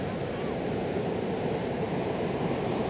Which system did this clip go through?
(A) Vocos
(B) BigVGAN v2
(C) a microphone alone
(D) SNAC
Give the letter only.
B